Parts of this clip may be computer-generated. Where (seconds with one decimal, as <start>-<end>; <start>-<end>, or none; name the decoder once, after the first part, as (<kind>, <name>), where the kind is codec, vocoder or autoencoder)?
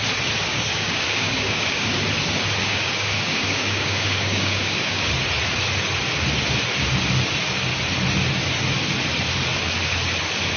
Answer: 0.5-2.0 (codec, DAC); 2.6-5.1